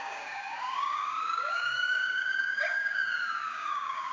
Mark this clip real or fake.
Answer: fake